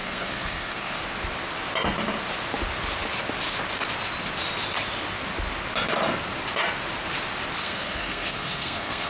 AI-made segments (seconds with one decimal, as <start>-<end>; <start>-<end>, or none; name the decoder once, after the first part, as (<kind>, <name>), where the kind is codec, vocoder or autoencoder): 0.0-1.0 (codec, SNAC); 7.6-9.1